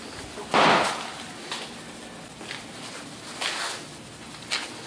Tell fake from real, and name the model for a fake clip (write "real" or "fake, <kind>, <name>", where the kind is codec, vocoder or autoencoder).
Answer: real